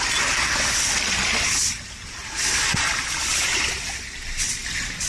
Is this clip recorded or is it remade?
recorded